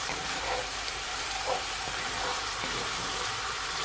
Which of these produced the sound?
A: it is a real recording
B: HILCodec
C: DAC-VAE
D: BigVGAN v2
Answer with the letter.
D